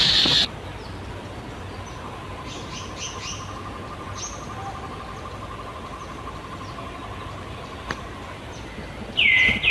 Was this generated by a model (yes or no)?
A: no